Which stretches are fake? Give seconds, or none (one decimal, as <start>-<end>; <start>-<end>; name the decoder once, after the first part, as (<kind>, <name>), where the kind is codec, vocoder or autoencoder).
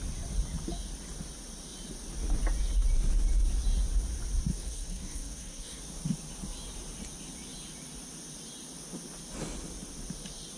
4.5-5.8 (codec, SNAC)